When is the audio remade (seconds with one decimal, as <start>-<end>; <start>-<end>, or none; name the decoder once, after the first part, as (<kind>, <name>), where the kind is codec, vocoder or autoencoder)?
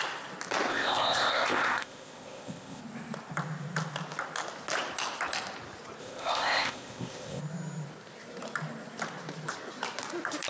0.7-2.8 (codec, ZipCodec); 6.0-7.4